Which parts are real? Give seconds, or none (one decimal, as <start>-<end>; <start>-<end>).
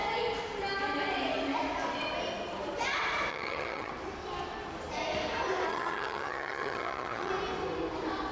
0.0-3.3; 3.9-5.7; 7.3-8.3